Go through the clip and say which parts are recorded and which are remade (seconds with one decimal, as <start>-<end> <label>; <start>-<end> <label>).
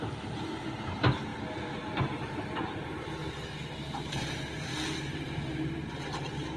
0.0-1.3 remade; 1.3-1.8 recorded; 1.8-3.2 remade; 3.2-4.1 recorded; 4.1-6.6 remade